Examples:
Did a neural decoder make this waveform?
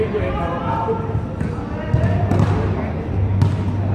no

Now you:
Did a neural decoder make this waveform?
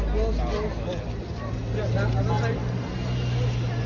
no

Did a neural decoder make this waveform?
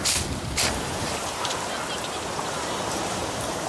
yes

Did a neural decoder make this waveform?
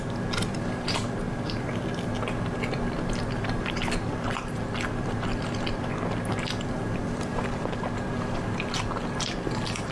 no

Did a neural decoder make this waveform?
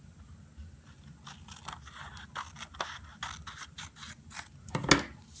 no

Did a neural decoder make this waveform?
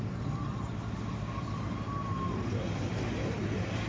no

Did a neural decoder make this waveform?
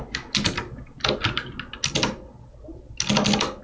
no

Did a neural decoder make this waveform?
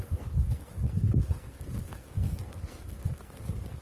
yes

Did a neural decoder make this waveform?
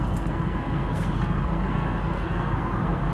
yes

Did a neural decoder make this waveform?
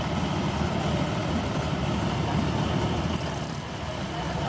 no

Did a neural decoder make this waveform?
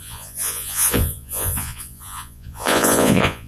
yes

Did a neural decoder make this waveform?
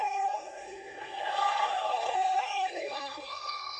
yes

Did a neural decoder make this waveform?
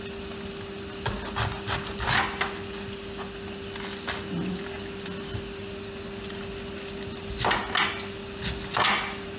no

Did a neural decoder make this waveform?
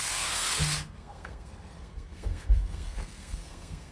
yes